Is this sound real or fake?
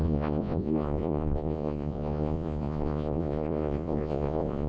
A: fake